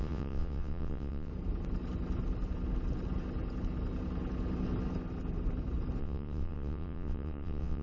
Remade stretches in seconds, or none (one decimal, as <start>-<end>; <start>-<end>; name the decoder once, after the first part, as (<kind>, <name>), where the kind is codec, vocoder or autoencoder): 0.0-1.3 (vocoder, WaveNeXt); 6.0-7.8